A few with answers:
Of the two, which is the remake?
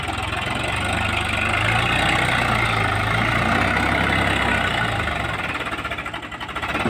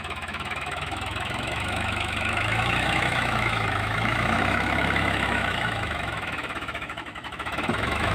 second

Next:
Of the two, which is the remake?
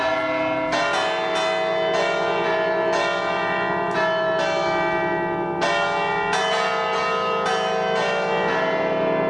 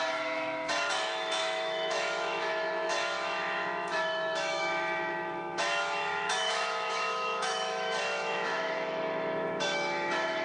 second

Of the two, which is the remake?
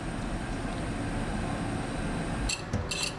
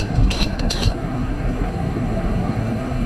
second